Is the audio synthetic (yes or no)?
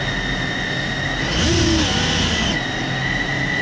no